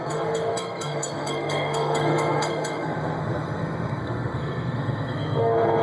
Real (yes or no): no